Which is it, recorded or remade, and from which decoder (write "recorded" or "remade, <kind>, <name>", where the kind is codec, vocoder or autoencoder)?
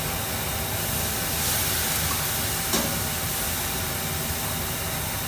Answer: recorded